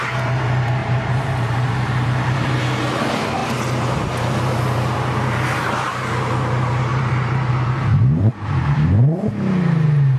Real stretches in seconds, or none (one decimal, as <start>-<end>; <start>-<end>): 0.0-0.8; 2.6-6.9; 7.5-7.9; 9.2-10.2